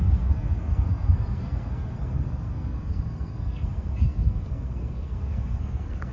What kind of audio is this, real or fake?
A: fake